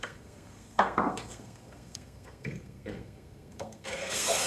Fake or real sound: fake